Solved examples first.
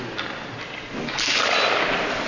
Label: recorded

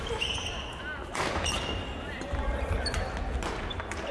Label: recorded